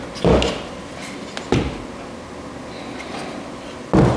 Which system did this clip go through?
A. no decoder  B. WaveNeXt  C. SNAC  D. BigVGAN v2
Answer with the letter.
A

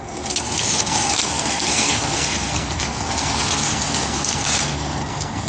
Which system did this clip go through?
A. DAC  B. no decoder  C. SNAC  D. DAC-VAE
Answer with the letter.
C